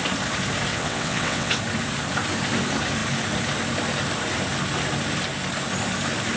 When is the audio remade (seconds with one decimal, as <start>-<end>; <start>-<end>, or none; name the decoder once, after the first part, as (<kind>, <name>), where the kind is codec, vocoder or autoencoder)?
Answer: 0.7-1.6 (vocoder, WaveNeXt)